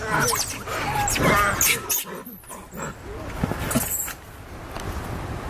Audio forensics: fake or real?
real